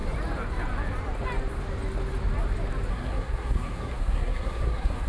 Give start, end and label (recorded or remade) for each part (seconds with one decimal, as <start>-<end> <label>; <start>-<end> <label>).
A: 0.0-2.9 recorded; 2.9-5.1 remade